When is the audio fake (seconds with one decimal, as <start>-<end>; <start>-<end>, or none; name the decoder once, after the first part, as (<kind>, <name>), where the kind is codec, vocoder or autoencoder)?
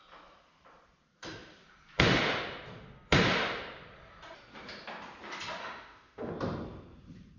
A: 5.6-6.3 (autoencoder, DAC-VAE)